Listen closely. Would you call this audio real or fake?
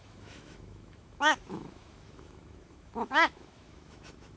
fake